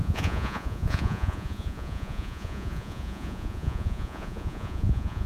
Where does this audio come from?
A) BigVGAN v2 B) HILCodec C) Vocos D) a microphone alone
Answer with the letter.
C